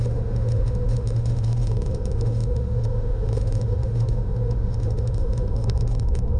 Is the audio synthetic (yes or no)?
yes